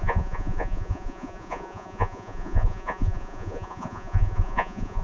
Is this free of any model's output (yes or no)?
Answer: no